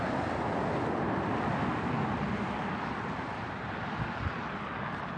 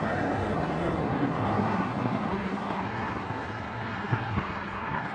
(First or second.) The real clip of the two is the first